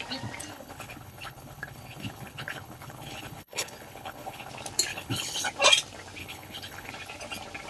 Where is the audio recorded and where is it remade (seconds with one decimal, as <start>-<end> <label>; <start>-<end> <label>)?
0.0-0.5 recorded; 0.5-4.5 remade; 4.5-4.9 recorded; 4.9-5.5 remade; 5.5-6.2 recorded; 6.2-6.9 remade; 6.9-7.7 recorded